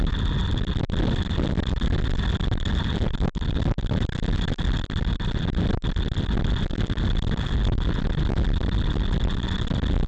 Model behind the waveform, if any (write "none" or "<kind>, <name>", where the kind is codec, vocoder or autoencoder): none